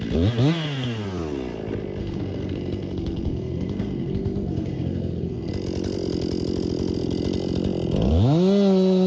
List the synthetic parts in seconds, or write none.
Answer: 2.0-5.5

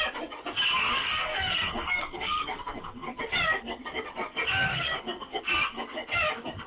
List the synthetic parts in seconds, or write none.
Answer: 1.0-3.2; 4.7-5.4